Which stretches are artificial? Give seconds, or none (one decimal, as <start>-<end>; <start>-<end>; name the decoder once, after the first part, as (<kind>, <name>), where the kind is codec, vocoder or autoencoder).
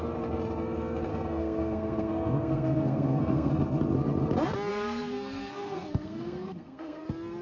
1.1-3.5 (codec, SNAC); 4.7-7.0